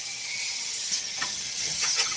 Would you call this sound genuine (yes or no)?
no